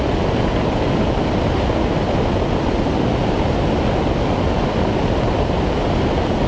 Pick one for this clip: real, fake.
real